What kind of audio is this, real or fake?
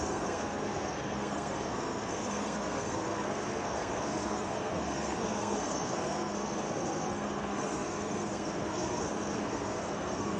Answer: fake